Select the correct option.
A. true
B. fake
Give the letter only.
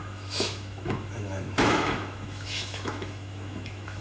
B